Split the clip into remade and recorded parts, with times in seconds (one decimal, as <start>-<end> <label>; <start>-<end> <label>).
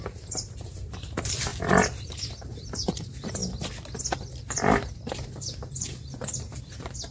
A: 0.0-1.5 remade; 1.5-2.5 recorded; 2.5-3.4 remade; 3.4-4.9 recorded; 4.9-7.1 remade